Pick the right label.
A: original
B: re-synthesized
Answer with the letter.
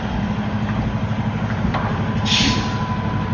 A